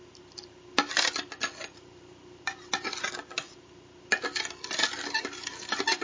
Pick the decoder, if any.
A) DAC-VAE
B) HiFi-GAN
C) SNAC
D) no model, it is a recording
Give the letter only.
D